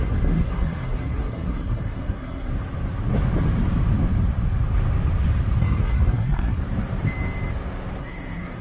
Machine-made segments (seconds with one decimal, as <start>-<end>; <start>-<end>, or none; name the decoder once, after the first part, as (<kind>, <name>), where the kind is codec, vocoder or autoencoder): 0.0-2.5 (codec, SNAC); 5.6-6.6; 8.0-8.6